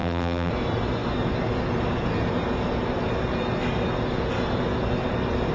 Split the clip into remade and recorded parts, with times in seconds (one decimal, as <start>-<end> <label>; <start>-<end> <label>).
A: 0.0-0.5 remade; 0.5-5.5 recorded